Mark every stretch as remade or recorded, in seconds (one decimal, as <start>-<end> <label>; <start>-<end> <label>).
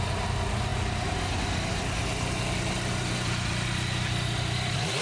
0.0-5.0 recorded